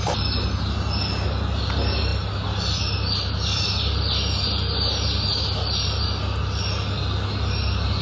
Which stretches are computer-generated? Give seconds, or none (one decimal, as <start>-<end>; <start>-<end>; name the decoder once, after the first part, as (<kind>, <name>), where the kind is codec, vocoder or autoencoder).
none